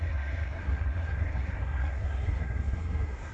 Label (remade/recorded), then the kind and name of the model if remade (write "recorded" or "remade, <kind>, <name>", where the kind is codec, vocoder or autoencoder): remade, codec, SNAC